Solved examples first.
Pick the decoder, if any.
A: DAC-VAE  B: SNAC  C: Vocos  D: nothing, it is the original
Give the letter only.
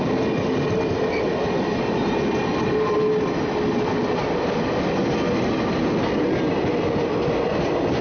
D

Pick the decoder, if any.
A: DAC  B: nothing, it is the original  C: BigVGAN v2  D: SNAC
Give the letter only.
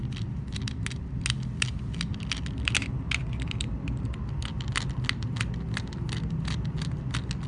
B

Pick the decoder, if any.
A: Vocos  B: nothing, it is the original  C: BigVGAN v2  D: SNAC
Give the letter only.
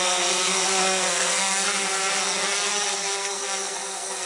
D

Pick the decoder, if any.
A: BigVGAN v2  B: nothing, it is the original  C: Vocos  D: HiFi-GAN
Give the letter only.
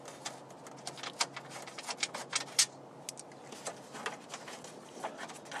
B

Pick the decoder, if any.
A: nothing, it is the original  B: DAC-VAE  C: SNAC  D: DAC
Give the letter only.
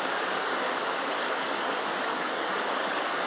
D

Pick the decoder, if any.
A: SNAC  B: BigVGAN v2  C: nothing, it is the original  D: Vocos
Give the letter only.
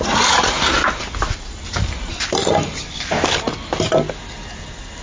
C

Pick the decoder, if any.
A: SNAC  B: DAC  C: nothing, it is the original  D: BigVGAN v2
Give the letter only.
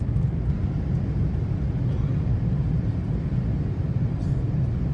C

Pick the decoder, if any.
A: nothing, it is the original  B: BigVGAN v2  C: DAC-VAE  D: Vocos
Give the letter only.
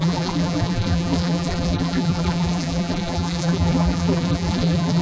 B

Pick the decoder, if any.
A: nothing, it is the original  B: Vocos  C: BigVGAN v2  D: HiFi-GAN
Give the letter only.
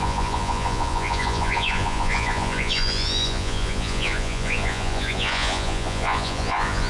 B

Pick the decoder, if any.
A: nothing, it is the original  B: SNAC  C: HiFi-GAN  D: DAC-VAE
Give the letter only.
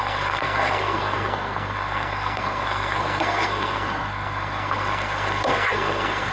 B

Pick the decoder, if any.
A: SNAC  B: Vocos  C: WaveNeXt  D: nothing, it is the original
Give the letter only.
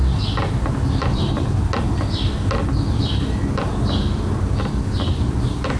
D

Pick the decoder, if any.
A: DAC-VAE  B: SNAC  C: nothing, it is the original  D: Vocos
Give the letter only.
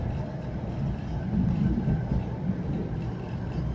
C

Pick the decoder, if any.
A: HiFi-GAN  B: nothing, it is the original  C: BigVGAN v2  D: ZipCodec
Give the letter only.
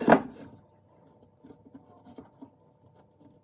B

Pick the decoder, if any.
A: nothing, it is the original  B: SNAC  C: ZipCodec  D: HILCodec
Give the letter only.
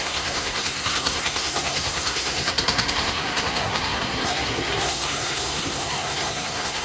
B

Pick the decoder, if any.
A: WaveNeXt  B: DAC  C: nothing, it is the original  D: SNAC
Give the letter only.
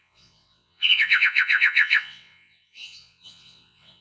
A